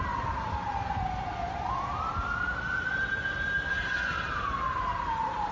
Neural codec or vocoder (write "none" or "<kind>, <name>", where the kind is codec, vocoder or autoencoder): vocoder, BigVGAN v2